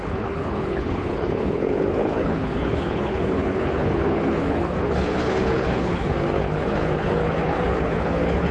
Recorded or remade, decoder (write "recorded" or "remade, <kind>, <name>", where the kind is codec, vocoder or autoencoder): remade, codec, HILCodec